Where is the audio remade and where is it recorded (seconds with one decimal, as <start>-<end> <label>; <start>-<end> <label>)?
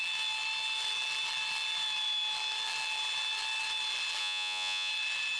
0.0-4.2 recorded; 4.2-4.9 remade; 4.9-5.4 recorded